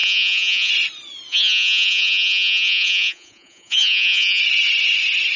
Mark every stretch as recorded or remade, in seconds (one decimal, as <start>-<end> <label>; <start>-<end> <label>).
0.0-0.7 remade; 0.7-1.3 recorded; 1.3-4.4 remade; 4.4-5.4 recorded